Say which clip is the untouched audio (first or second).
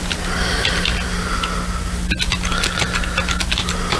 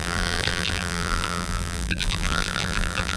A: first